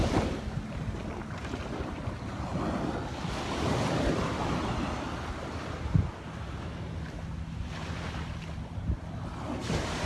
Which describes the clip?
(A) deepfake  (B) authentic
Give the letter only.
B